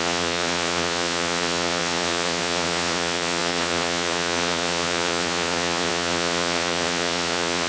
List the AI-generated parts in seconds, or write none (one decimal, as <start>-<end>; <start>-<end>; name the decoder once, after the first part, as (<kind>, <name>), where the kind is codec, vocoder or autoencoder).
0.0-7.7 (vocoder, Vocos)

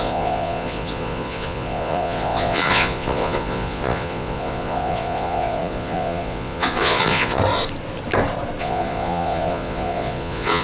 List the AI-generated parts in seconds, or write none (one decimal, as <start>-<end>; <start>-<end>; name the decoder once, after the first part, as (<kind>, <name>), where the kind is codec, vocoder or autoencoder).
0.0-7.4 (vocoder, Vocos); 8.6-10.6

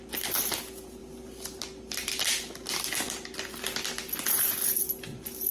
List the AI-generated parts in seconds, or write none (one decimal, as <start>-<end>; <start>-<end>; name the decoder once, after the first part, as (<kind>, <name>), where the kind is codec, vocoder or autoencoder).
none

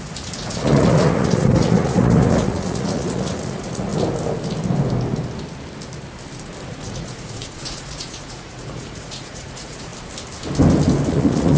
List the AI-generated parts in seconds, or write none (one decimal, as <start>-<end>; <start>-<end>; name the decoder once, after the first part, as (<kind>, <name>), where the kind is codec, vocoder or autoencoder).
0.0-3.9 (vocoder, Vocos); 6.7-9.9; 11.1-11.6

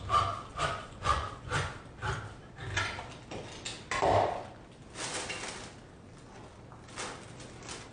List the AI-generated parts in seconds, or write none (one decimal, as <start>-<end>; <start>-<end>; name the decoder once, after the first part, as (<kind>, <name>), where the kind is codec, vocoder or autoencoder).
0.5-1.7 (vocoder, Vocos)